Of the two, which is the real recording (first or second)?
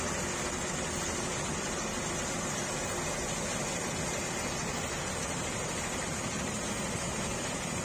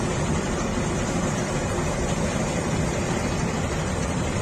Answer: first